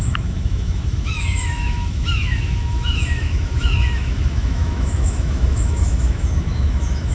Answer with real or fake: fake